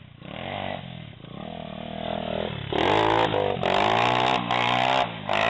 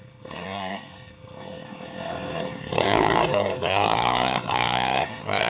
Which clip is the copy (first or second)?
second